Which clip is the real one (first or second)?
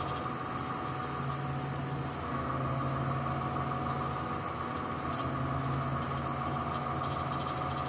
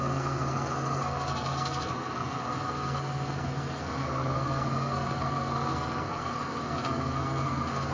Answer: first